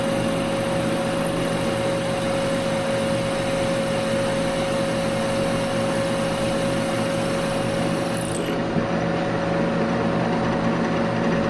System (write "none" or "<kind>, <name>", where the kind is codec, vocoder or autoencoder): none